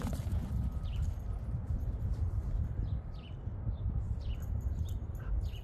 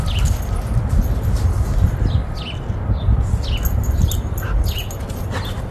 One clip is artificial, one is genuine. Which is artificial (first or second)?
first